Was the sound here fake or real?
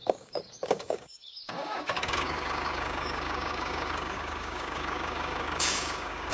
fake